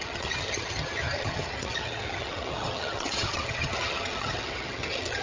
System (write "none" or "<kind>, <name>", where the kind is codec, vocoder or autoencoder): vocoder, HiFi-GAN